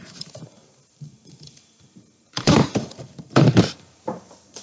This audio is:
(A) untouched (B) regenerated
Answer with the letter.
B